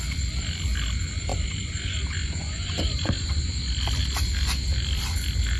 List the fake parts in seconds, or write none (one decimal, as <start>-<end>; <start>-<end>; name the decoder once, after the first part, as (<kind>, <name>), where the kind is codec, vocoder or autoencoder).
1.3-3.5 (vocoder, Vocos)